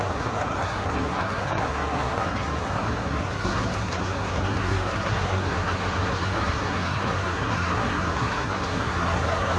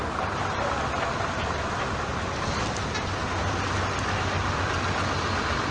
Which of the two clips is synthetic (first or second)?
first